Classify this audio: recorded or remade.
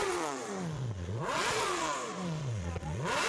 remade